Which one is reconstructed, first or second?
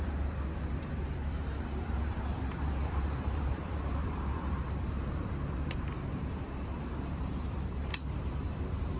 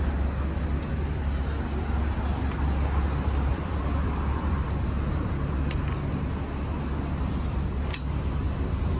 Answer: first